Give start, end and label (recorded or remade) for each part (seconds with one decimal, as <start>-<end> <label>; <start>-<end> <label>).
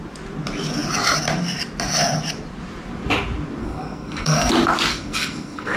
0.0-3.6 recorded; 3.6-4.5 remade; 4.5-4.9 recorded; 4.9-5.8 remade